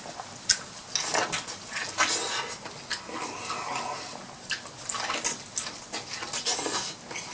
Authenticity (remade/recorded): recorded